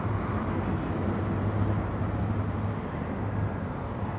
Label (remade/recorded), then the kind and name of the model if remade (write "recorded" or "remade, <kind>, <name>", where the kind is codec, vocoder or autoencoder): recorded